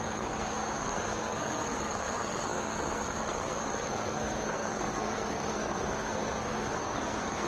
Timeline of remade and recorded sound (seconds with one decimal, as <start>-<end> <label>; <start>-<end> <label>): 0.0-7.5 remade